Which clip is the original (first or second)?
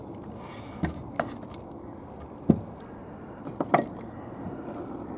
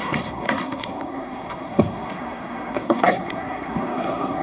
first